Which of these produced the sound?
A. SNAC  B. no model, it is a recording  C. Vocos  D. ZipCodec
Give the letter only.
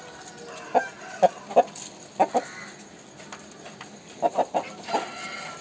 B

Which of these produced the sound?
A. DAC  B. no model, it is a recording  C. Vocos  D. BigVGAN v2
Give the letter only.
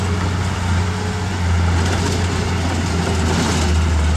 B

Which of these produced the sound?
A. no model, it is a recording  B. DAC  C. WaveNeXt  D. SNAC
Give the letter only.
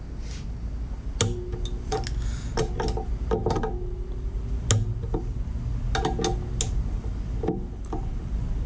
A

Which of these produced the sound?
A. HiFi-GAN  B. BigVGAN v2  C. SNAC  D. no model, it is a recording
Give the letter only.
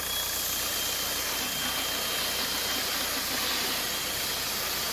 D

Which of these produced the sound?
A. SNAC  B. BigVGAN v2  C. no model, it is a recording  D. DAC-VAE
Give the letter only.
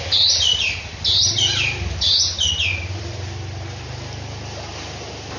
C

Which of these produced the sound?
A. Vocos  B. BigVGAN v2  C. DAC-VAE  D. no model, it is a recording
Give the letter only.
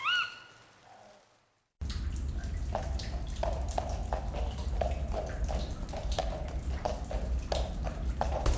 D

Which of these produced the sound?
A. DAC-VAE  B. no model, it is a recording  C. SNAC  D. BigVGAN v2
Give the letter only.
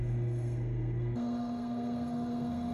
C